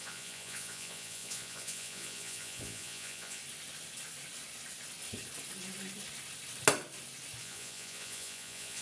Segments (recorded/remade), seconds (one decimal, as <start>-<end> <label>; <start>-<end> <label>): 0.0-3.4 remade; 3.4-7.4 recorded; 7.4-8.8 remade